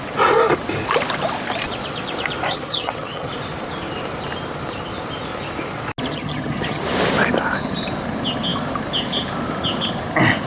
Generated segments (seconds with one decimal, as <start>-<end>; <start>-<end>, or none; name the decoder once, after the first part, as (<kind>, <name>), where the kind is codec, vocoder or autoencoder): 2.5-3.3 (vocoder, HiFi-GAN); 6.1-6.8

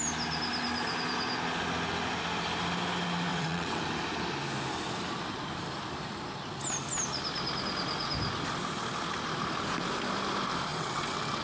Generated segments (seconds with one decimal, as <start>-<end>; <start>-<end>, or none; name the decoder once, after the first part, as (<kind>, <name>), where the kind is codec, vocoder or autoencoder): 3.3-3.8 (vocoder, WaveNeXt); 10.7-11.4